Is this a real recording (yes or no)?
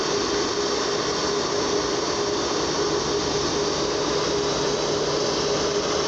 yes